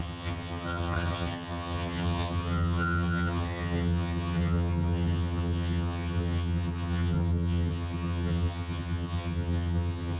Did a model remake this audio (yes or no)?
yes